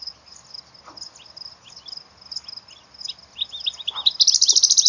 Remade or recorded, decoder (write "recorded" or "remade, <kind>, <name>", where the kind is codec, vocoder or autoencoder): recorded